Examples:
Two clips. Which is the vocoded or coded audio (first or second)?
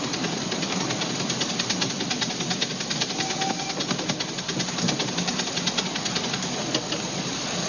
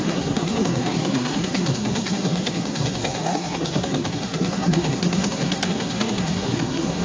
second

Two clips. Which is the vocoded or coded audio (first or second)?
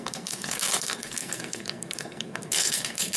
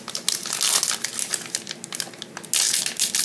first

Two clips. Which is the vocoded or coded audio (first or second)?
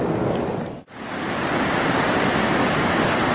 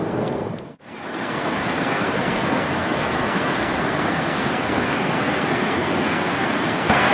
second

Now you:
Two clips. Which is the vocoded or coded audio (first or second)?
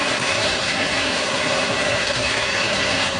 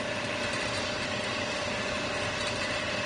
first